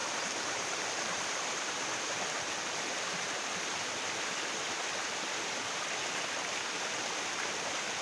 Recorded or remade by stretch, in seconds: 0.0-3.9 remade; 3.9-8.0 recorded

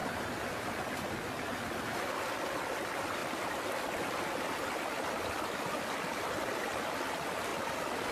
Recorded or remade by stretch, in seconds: 0.0-3.2 recorded; 3.2-6.3 remade; 6.3-8.1 recorded